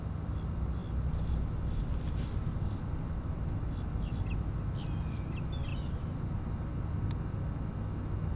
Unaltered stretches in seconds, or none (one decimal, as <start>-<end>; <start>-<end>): 0.0-5.7; 6.4-8.4